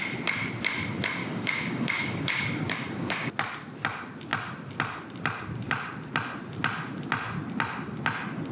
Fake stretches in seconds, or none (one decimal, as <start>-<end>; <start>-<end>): 1.2-3.3